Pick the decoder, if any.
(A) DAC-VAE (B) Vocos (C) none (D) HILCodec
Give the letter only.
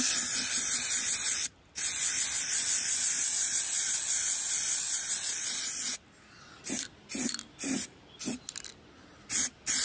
C